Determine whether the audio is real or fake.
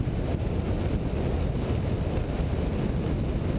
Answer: real